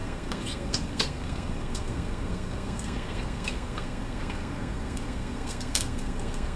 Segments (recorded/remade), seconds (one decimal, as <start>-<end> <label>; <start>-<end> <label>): 0.0-6.6 remade